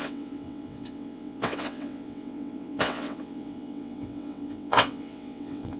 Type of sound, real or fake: fake